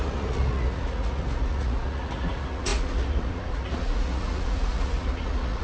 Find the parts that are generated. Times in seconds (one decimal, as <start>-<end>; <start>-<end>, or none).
0.0-5.6